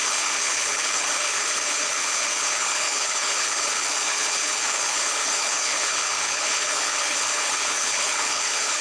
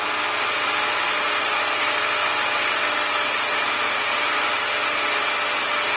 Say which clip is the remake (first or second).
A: first